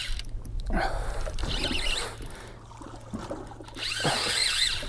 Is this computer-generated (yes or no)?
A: no